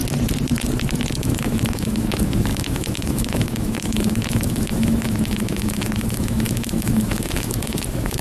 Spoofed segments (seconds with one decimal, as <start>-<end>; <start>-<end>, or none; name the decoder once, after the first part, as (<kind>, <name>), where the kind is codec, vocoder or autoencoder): 1.2-8.2 (autoencoder, DAC-VAE)